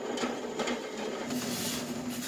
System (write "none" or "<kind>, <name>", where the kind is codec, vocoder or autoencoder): none